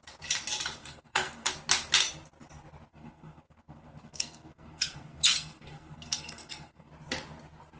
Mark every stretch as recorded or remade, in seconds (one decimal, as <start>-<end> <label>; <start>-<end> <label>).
0.0-0.8 recorded; 0.8-1.5 remade; 1.5-2.9 recorded; 2.9-6.9 remade; 6.9-7.8 recorded